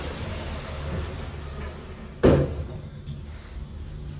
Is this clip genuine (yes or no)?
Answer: yes